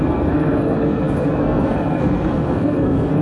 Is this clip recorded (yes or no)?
no